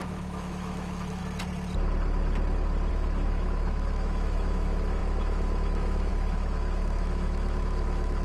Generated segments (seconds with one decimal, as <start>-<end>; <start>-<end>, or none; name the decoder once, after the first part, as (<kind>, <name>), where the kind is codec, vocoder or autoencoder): 0.0-1.2 (autoencoder, DAC-VAE); 2.9-8.2